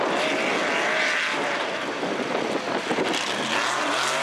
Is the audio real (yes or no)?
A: yes